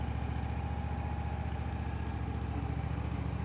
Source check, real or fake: real